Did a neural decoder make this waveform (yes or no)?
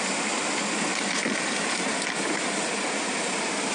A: no